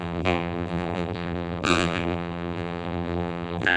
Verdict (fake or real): fake